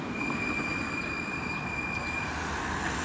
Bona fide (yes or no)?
yes